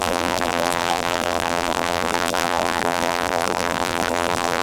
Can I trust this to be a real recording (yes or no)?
no